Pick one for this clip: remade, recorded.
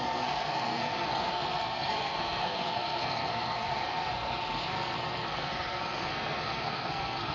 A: remade